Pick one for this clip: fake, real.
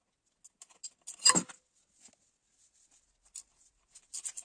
real